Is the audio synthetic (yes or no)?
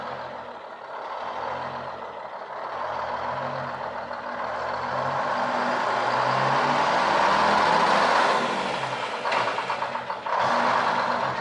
no